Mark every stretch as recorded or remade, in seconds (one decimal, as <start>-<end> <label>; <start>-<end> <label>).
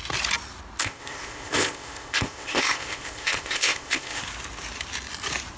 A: 0.0-0.8 recorded; 0.8-4.2 remade; 4.2-5.6 recorded